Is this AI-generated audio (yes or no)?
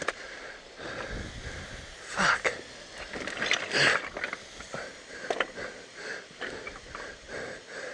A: no